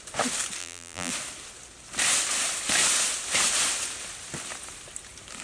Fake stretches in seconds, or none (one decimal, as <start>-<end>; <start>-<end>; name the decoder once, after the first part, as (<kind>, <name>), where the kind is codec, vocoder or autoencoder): 0.6-1.1 (vocoder, BigVGAN v2)